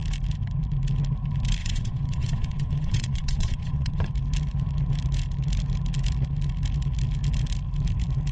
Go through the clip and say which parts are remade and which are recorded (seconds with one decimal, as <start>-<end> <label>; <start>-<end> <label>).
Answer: 0.0-1.6 recorded; 1.6-4.1 remade; 4.1-8.3 recorded